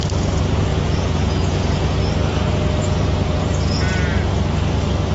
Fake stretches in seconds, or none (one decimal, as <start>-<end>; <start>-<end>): 0.7-2.0; 2.8-3.6

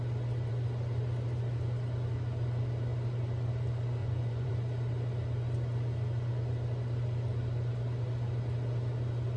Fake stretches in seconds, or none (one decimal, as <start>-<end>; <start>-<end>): 4.0-4.5